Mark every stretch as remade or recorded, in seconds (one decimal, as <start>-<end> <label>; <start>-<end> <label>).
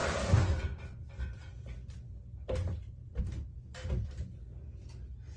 0.0-5.4 recorded